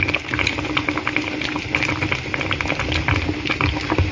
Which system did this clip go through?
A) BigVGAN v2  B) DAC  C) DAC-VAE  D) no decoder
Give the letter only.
D